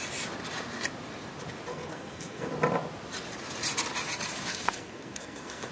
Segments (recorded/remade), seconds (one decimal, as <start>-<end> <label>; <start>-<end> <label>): 0.0-1.7 recorded; 1.7-2.5 remade; 2.5-4.5 recorded; 4.5-5.7 remade